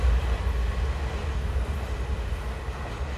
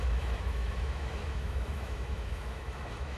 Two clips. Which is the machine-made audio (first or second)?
second